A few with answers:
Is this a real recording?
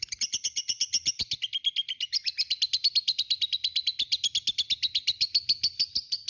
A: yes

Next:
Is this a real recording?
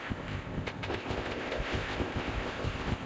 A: no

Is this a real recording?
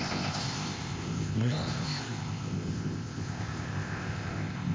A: no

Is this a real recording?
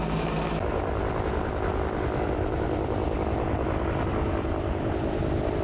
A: yes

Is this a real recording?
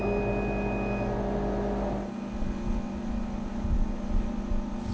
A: yes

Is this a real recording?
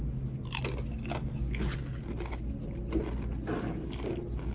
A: yes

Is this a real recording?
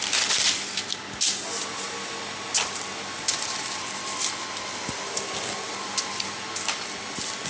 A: yes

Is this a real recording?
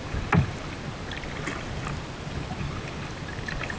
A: yes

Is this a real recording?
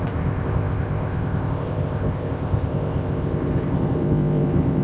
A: no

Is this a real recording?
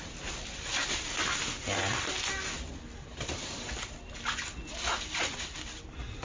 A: yes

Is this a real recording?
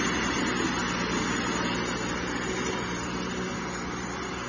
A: yes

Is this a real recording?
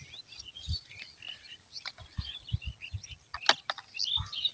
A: yes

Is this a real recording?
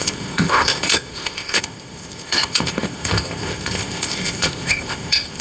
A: no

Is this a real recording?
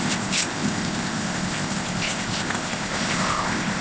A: no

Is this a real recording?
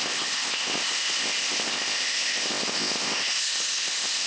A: no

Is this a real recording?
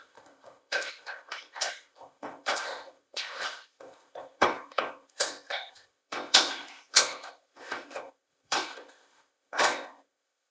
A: no